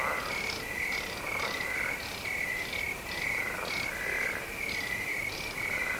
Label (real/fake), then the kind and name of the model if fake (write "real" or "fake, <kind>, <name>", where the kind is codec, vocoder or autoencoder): real